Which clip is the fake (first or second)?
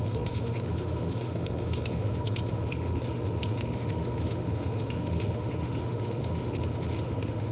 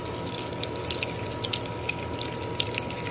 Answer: first